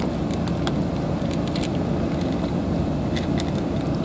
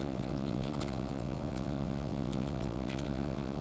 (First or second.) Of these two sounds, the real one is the first